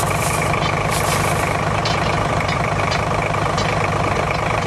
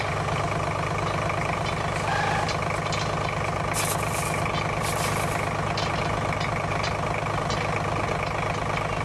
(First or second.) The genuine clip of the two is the second